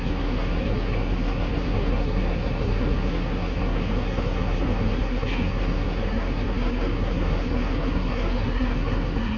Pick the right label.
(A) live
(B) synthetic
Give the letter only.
B